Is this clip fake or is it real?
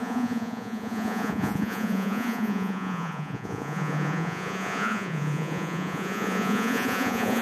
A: fake